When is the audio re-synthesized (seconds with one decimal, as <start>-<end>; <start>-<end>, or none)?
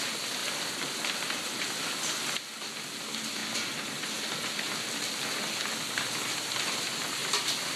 0.4-1.6